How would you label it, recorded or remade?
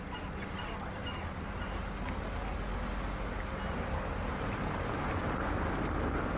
recorded